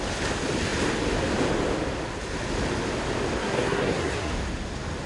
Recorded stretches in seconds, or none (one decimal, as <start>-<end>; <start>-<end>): 0.0-3.4; 4.3-5.1